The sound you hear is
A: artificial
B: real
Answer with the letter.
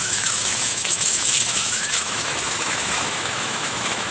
A